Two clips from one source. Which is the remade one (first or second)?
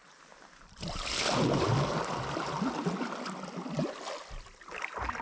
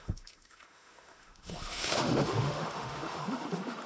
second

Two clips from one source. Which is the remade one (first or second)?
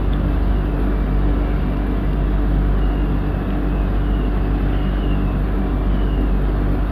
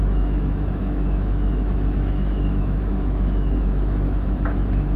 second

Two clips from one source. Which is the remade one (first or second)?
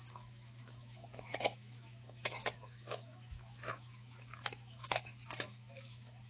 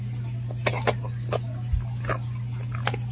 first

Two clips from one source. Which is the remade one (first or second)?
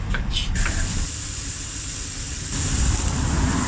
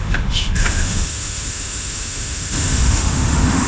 second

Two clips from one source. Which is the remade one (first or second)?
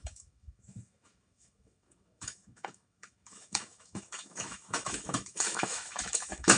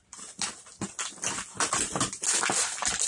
first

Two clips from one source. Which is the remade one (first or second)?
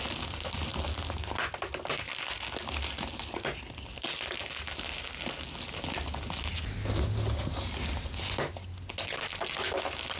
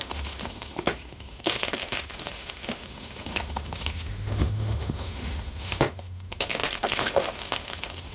second